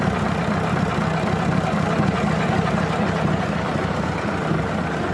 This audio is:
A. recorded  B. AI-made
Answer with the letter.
A